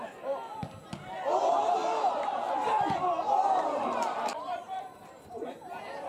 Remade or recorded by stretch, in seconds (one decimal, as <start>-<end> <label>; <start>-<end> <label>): 0.0-1.8 recorded; 1.8-5.5 remade; 5.5-6.1 recorded